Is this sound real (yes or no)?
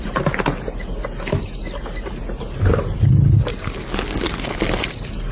yes